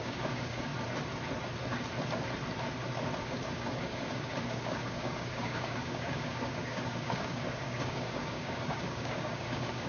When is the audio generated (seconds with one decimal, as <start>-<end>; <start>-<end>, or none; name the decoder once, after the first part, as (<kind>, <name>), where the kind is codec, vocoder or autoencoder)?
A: 0.0-0.7 (codec, DAC); 3.2-9.9